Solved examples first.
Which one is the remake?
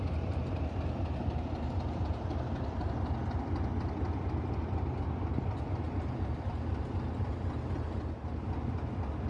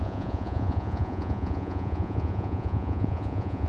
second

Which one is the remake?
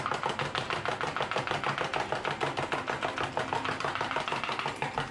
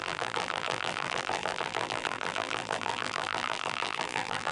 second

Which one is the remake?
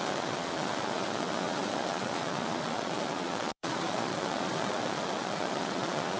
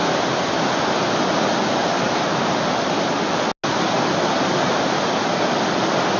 first